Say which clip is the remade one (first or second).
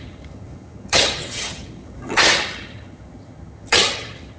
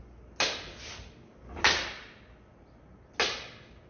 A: first